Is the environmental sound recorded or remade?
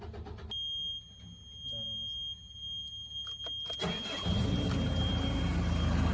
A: recorded